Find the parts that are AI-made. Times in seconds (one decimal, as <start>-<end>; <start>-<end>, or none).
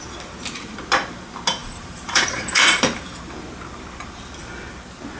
1.6-3.2